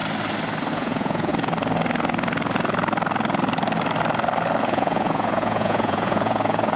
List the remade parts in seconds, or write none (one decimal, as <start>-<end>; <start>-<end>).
0.7-1.3; 4.6-6.8